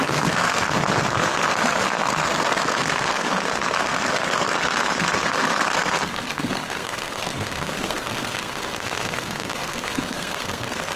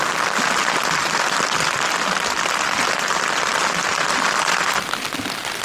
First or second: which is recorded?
second